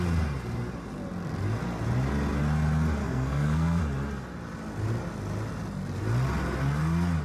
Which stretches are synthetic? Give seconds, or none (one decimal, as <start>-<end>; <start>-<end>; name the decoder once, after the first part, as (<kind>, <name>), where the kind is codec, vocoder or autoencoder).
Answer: 3.0-3.8 (codec, SNAC)